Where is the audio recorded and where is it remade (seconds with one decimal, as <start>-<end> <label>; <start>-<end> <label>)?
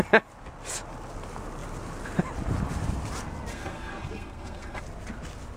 0.0-3.5 recorded; 3.5-4.8 remade; 4.8-5.6 recorded